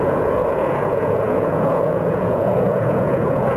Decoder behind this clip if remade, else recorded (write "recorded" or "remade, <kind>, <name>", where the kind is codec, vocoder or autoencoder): remade, vocoder, Vocos